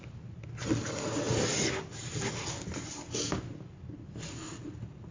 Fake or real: real